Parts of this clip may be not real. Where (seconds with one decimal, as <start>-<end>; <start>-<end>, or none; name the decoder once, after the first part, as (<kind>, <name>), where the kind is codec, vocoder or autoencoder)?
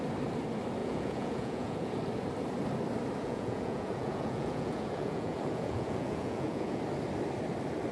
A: 0.8-1.9 (vocoder, Vocos); 3.2-6.8